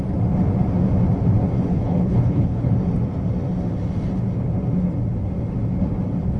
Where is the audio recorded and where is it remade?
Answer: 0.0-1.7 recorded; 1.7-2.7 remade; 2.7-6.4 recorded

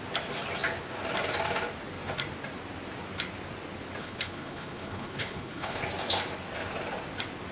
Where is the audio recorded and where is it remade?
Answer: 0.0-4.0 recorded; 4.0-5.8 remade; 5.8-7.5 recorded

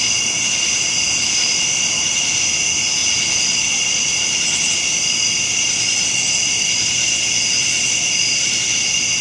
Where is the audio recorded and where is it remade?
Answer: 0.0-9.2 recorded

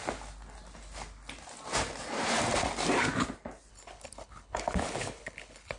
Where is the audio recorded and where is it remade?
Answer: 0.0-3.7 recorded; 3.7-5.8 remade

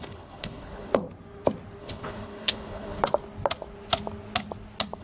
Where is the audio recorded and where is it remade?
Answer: 0.0-0.9 remade; 0.9-1.8 recorded; 1.8-3.0 remade; 3.0-5.0 recorded

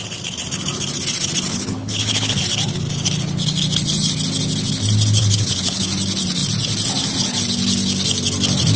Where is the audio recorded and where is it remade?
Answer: 0.0-1.5 recorded; 1.5-2.4 remade; 2.4-5.2 recorded; 5.2-5.8 remade; 5.8-8.8 recorded